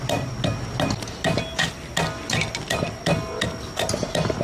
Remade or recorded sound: recorded